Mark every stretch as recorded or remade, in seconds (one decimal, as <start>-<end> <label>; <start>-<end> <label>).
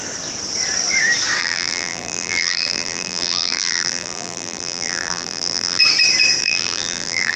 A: 0.0-1.4 recorded; 1.4-5.8 remade; 5.8-6.4 recorded; 6.4-7.4 remade